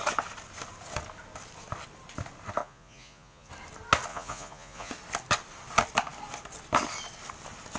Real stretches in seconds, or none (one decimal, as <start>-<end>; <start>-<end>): 0.0-2.6; 3.5-4.1; 4.9-7.8